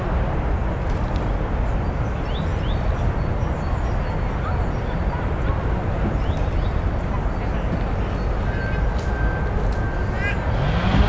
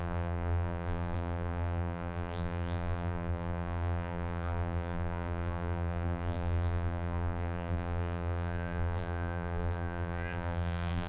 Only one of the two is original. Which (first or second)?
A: first